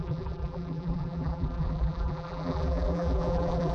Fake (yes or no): yes